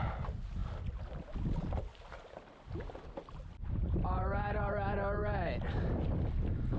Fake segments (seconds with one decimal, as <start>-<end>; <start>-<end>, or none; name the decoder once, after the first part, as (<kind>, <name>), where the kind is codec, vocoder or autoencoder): none